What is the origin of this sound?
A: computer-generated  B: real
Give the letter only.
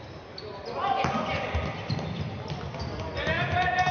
B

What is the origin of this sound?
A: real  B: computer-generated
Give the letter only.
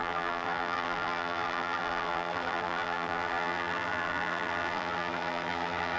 B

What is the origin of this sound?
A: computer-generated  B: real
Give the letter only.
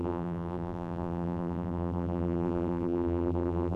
A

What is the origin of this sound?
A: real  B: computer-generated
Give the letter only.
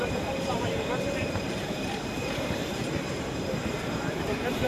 B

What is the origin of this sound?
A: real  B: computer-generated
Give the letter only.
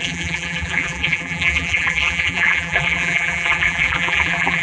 B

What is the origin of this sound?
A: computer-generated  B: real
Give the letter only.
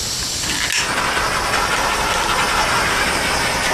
B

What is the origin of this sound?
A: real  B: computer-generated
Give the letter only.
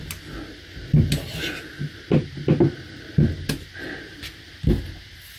A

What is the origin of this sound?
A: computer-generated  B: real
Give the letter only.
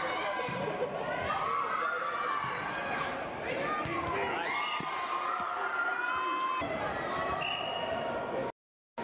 B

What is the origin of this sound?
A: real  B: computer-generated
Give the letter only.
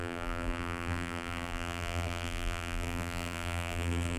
B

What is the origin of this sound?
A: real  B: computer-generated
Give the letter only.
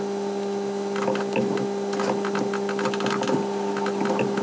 A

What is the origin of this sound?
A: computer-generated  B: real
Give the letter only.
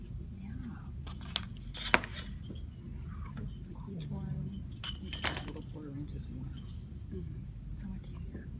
B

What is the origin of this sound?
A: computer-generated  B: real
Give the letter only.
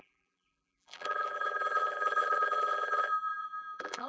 A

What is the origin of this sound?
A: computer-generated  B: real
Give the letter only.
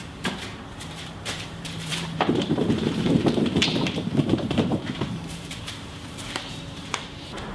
A